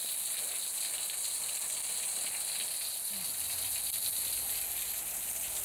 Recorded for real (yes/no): yes